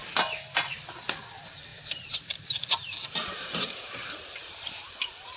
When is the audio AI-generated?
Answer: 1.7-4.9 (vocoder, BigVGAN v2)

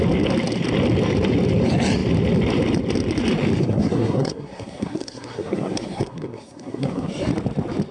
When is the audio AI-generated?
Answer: 3.6-7.1 (codec, SNAC)

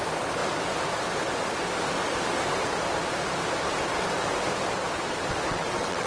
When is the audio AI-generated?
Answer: 5.5-6.1 (vocoder, WaveNeXt)